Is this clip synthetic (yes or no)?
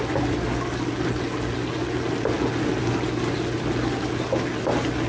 no